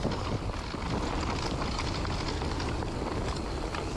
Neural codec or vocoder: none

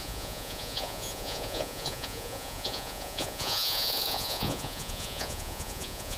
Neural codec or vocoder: vocoder, Vocos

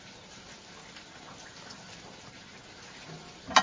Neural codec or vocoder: none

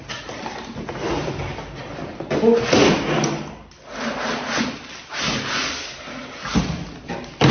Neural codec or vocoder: none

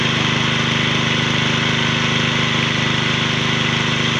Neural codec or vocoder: none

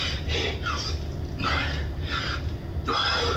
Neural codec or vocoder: none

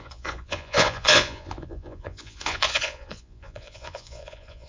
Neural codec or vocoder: vocoder, Vocos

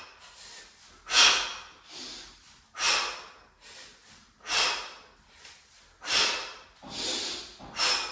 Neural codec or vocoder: none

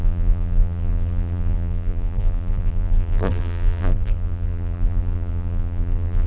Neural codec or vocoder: vocoder, BigVGAN v2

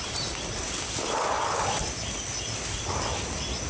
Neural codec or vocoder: none